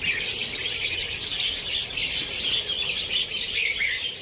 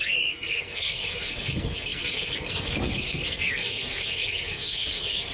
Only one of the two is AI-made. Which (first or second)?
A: second